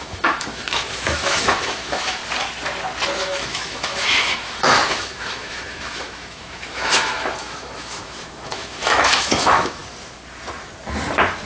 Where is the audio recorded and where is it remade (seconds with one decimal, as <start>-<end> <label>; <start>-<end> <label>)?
0.0-2.2 remade; 2.2-3.2 recorded; 3.2-9.8 remade; 9.8-11.5 recorded